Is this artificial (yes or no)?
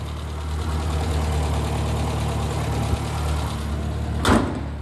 no